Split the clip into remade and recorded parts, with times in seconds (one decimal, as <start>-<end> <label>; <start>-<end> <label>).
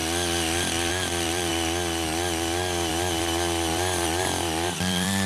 0.0-0.9 recorded; 0.9-1.5 remade; 1.5-2.9 recorded; 2.9-5.3 remade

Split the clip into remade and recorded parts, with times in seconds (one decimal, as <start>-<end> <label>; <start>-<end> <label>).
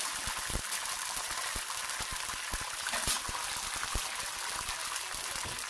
0.0-5.7 recorded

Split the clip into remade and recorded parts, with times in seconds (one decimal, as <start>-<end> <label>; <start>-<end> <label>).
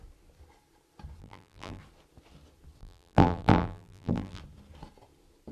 0.0-1.2 recorded; 1.2-1.8 remade; 1.8-2.8 recorded; 2.8-4.4 remade; 4.4-5.5 recorded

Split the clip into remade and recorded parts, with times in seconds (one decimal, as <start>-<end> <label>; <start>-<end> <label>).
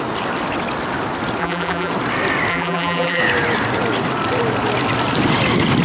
0.0-1.4 recorded; 1.4-1.9 remade; 1.9-2.5 recorded; 2.5-3.2 remade; 3.2-5.8 recorded